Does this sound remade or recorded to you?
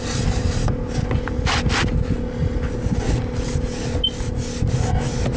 recorded